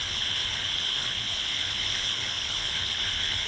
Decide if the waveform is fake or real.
fake